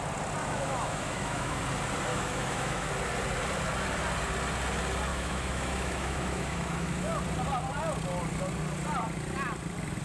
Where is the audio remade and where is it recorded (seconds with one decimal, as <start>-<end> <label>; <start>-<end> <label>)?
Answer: 0.0-0.4 recorded; 0.4-1.6 remade; 1.6-2.1 recorded; 2.1-2.9 remade; 2.9-5.1 recorded; 5.1-7.2 remade; 7.2-10.0 recorded

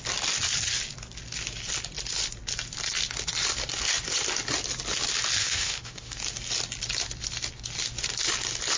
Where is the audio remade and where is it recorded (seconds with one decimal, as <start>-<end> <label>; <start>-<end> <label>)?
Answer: 0.0-5.4 recorded; 5.4-6.2 remade; 6.2-8.8 recorded